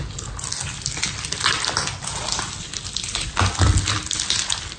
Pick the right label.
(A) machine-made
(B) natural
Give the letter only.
B